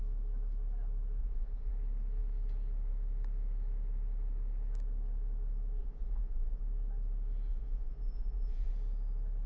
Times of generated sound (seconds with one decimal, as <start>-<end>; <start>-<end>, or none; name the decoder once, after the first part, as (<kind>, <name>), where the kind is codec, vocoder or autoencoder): 1.2-1.7 (vocoder, Vocos); 5.8-6.6; 7.5-8.7